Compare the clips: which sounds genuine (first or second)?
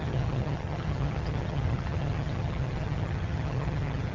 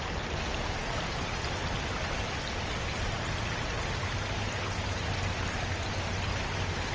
second